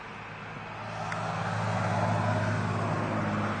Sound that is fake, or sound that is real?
real